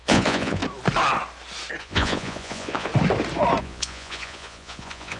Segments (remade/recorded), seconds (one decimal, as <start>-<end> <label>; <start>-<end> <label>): 0.0-0.6 remade; 0.6-1.8 recorded; 1.8-2.9 remade; 2.9-3.6 recorded; 3.6-5.2 remade